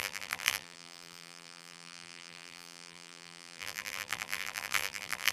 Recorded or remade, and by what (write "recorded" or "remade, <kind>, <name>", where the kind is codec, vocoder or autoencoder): remade, vocoder, BigVGAN v2